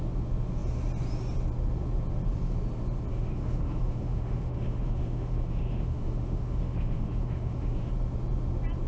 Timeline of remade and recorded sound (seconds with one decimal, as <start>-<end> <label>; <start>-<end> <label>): 0.0-3.1 recorded; 3.1-7.9 remade; 7.9-8.9 recorded